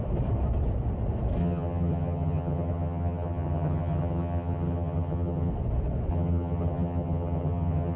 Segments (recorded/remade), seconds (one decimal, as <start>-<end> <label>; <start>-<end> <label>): 0.0-1.4 recorded; 1.4-5.5 remade; 5.5-6.1 recorded; 6.1-8.0 remade